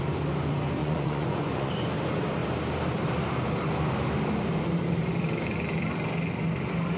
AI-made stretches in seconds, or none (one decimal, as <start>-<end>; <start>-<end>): 0.8-1.7